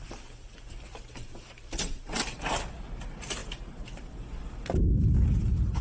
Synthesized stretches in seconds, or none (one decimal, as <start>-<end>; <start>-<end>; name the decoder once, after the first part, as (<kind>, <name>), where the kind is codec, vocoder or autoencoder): none